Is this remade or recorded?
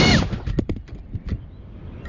recorded